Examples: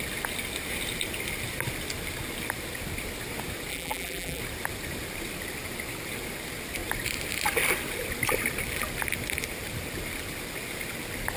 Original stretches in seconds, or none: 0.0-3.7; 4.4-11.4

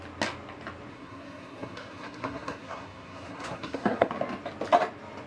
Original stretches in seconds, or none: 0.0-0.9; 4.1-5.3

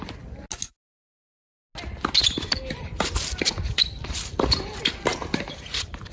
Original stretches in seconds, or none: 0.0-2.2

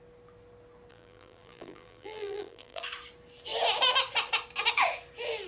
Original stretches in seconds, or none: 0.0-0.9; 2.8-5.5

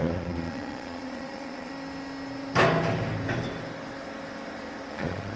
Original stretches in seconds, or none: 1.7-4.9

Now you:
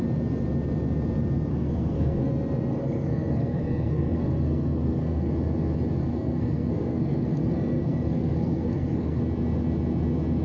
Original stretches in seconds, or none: 0.0-1.5; 2.3-2.7; 5.3-6.0; 9.2-10.4

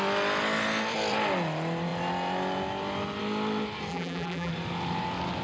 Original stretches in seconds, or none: 0.0-3.9; 4.5-5.4

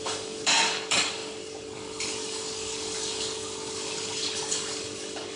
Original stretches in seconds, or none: none